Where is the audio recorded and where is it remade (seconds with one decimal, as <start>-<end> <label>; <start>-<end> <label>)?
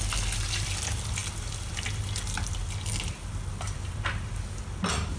0.0-5.2 recorded